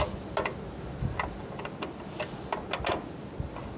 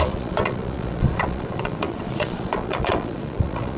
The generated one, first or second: second